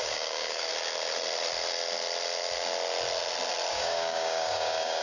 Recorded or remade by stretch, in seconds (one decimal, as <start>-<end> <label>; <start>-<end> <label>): 0.0-0.7 remade; 0.7-3.7 recorded; 3.7-5.0 remade